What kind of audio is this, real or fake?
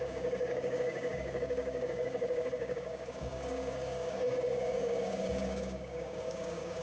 fake